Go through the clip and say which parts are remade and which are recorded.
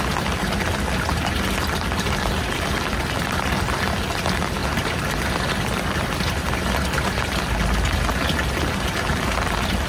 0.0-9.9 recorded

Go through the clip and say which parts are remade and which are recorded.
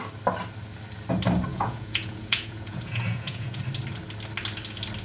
0.0-1.5 recorded; 1.5-3.6 remade; 3.6-5.0 recorded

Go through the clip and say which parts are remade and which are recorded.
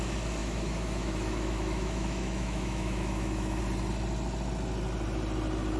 0.0-0.4 recorded; 0.4-3.6 remade; 3.6-5.8 recorded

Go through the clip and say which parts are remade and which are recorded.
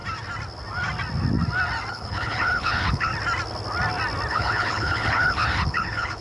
0.0-1.9 recorded; 1.9-3.1 remade; 3.1-4.3 recorded; 4.3-6.2 remade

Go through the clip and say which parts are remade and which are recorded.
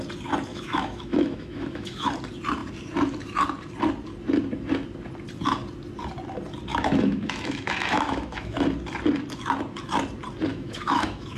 0.0-0.5 recorded; 0.5-2.1 remade; 2.1-6.7 recorded; 6.7-8.6 remade; 8.6-10.5 recorded; 10.5-11.4 remade